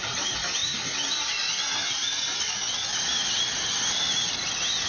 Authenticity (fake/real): real